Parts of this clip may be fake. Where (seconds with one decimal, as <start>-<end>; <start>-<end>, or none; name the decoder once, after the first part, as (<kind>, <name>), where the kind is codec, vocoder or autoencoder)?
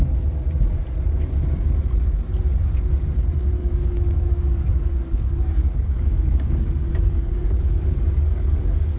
3.6-9.0 (codec, DAC)